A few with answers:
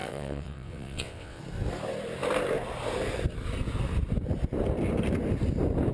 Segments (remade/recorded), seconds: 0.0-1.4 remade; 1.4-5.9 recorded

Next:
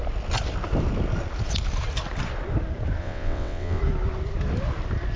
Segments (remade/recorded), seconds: 0.0-3.0 recorded; 3.0-3.8 remade; 3.8-5.2 recorded

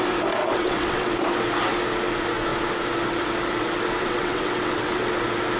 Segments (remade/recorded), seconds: 0.0-0.4 recorded; 0.4-1.1 remade; 1.1-4.0 recorded; 4.0-5.1 remade; 5.1-5.6 recorded

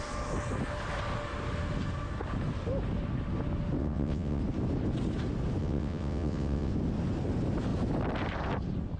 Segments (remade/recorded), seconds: 0.0-3.8 recorded; 3.8-4.4 remade; 4.4-5.6 recorded; 5.6-6.7 remade; 6.7-9.0 recorded

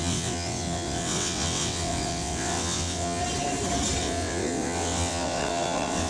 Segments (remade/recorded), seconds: 0.0-3.2 remade; 3.2-4.0 recorded; 4.0-6.1 remade